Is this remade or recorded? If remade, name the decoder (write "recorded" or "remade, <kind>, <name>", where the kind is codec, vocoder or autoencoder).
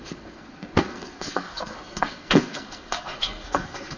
remade, codec, SNAC